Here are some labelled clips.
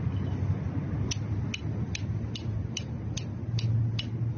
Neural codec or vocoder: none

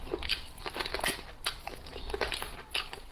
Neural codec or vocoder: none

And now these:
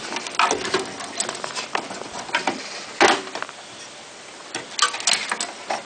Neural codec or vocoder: none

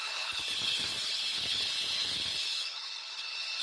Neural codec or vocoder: codec, HILCodec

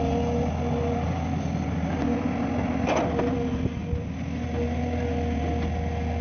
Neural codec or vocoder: none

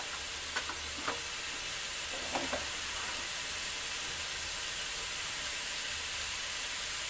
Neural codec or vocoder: none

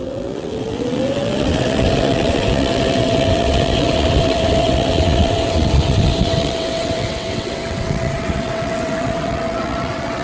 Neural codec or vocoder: vocoder, WaveNeXt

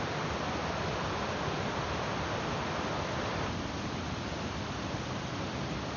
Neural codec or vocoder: none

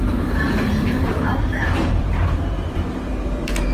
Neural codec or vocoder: vocoder, BigVGAN v2